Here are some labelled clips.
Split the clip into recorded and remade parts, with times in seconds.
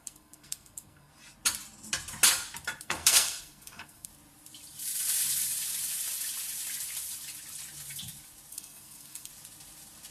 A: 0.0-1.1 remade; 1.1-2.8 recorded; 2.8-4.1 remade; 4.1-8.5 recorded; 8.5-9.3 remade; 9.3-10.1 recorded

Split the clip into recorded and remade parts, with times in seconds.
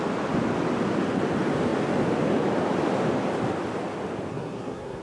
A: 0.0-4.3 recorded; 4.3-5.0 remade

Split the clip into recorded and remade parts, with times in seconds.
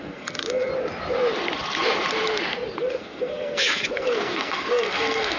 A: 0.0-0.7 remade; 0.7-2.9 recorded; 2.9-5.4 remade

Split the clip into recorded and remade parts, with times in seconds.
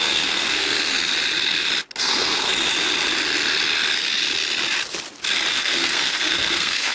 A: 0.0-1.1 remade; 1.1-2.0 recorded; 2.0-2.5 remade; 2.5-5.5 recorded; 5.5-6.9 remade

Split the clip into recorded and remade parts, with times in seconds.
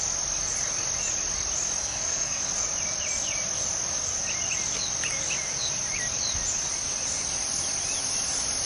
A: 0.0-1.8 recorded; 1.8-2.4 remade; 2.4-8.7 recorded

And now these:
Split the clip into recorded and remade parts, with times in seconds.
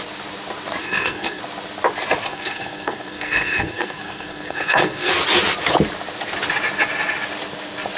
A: 0.0-0.8 recorded; 0.8-1.4 remade; 1.4-2.3 recorded; 2.3-5.1 remade; 5.1-8.0 recorded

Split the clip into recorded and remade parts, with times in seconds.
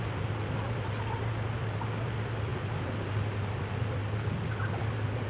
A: 0.0-5.3 recorded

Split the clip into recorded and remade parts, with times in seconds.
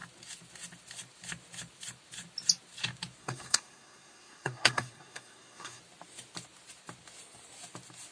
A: 0.0-3.2 recorded; 3.2-5.8 remade; 5.8-8.1 recorded